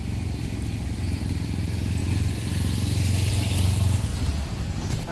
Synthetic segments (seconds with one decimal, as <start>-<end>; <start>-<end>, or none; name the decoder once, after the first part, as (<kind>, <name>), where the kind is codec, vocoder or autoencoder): none